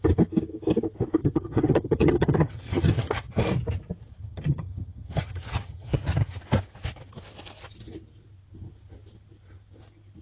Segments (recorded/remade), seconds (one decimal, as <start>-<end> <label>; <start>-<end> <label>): 0.0-1.2 recorded; 1.2-3.3 remade; 3.3-4.2 recorded; 4.2-6.4 remade; 6.4-10.2 recorded